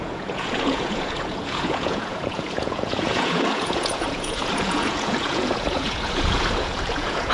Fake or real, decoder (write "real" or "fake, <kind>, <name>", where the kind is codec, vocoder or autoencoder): fake, vocoder, Vocos